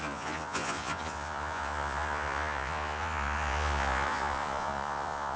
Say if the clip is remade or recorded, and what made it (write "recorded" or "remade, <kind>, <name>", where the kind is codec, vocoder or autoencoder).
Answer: remade, vocoder, Vocos